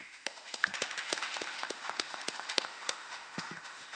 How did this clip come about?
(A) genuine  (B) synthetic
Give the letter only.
B